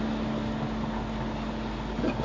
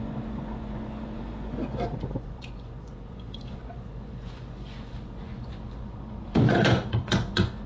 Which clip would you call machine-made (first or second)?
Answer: second